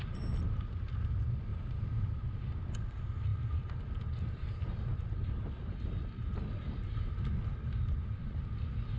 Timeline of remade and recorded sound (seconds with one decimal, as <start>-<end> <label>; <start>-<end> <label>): 0.0-1.5 recorded; 1.5-2.2 remade; 2.2-9.0 recorded